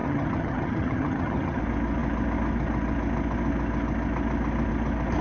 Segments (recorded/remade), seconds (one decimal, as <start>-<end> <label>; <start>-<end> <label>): 0.0-1.6 remade; 1.6-5.2 recorded